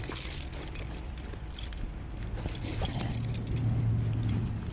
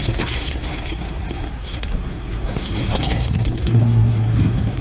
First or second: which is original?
first